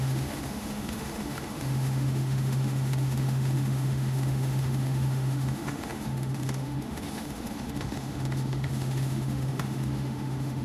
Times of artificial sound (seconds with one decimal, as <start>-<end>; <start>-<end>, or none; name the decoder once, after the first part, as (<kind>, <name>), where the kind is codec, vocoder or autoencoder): 0.0-10.6 (autoencoder, DAC-VAE)